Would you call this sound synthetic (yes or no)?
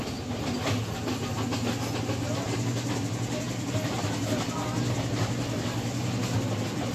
no